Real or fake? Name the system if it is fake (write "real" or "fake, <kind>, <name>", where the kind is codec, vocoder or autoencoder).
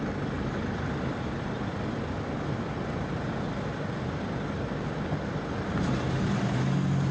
real